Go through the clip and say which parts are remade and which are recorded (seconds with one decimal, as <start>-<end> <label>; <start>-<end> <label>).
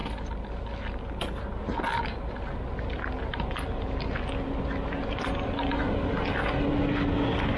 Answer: 0.0-7.6 recorded